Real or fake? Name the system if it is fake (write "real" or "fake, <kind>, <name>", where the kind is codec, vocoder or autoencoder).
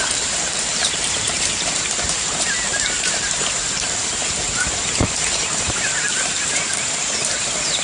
fake, vocoder, BigVGAN v2